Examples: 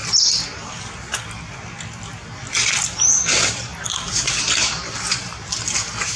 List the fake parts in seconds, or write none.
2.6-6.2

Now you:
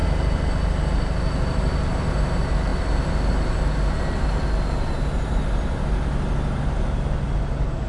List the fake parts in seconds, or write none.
none

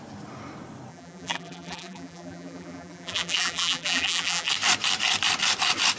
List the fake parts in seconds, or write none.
0.9-4.5

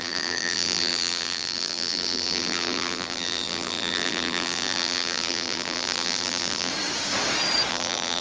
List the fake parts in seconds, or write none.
0.0-6.7; 7.7-8.2